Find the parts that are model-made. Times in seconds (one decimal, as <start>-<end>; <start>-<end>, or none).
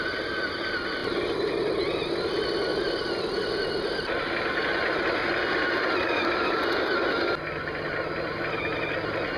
1.0-1.7